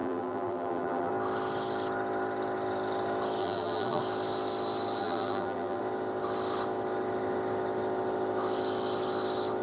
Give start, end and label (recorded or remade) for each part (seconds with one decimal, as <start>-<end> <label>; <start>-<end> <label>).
0.0-1.1 remade; 1.1-3.4 recorded; 3.4-4.0 remade; 4.0-5.0 recorded; 5.0-5.8 remade; 5.8-9.6 recorded